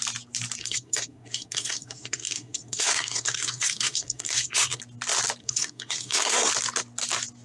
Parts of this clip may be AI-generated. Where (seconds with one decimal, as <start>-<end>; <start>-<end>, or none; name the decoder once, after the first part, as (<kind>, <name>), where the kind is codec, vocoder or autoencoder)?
0.6-4.8 (codec, SNAC); 5.4-6.5